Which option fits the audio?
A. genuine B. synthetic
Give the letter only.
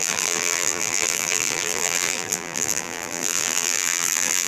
B